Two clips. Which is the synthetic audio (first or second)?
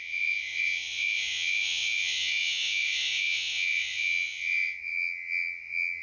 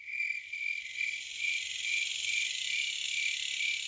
first